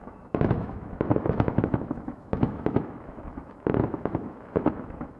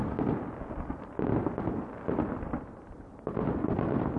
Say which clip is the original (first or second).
second